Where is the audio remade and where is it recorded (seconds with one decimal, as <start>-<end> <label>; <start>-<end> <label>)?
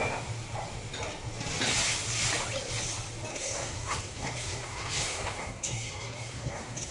0.0-3.3 recorded; 3.3-6.9 remade